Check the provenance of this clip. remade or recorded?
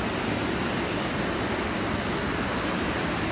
recorded